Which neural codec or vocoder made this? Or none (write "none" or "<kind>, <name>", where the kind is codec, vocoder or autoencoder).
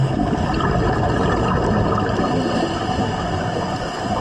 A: none